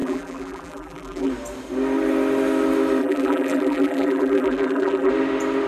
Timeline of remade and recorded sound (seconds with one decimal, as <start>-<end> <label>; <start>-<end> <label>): 0.0-1.3 remade; 1.3-3.0 recorded; 3.0-5.1 remade; 5.1-5.7 recorded